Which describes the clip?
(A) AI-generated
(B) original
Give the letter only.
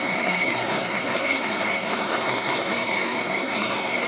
A